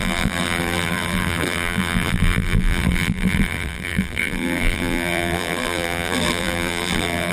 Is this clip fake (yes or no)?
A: yes